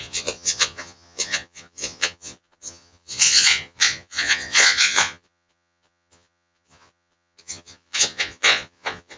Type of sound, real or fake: fake